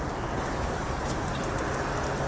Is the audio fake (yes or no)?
no